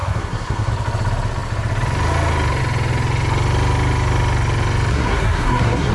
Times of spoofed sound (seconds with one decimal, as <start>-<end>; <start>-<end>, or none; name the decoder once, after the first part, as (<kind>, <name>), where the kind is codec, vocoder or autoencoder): 0.0-0.7 (codec, SNAC); 4.9-5.9